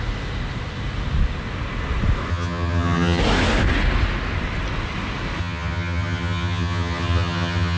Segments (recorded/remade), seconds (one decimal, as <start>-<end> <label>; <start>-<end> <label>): 0.0-2.3 recorded; 2.3-3.2 remade; 3.2-5.4 recorded; 5.4-7.8 remade